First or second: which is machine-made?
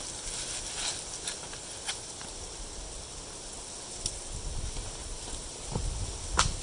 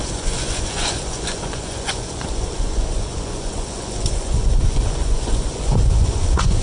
second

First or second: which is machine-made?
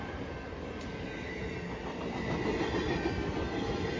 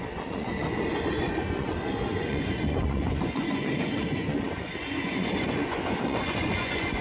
second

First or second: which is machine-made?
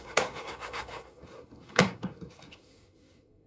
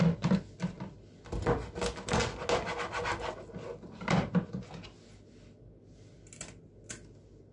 first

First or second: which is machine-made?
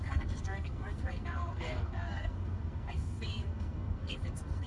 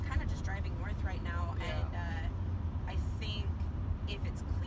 first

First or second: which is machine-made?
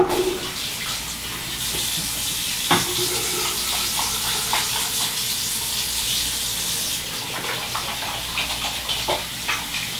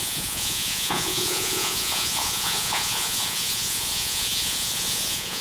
second